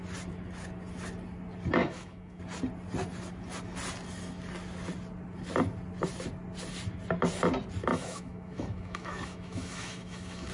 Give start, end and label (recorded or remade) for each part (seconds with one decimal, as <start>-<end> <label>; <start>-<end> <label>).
0.0-1.8 recorded; 1.8-2.4 remade; 2.4-7.9 recorded; 7.9-10.5 remade